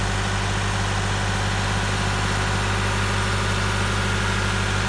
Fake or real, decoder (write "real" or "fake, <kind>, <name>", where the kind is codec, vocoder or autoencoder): real